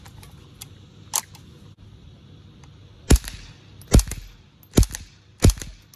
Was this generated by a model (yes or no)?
no